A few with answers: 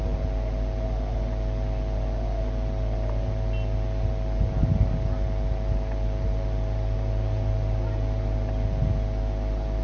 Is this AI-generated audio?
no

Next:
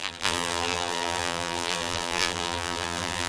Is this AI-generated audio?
yes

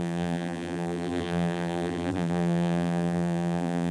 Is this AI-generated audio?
yes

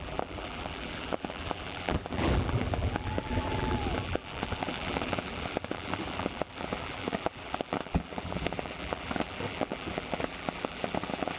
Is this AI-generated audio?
yes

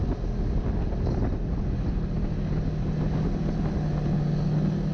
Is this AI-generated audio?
no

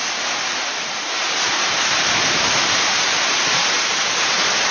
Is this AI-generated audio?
yes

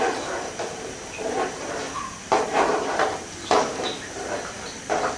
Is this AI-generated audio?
yes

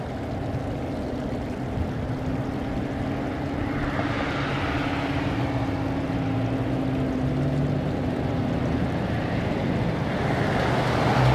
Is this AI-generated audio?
no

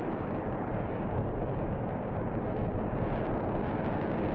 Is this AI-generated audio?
yes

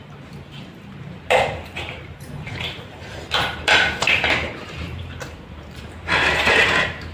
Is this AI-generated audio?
yes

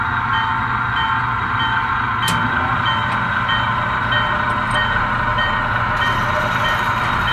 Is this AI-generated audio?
no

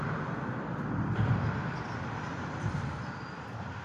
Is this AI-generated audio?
yes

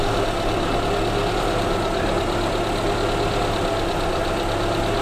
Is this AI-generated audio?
no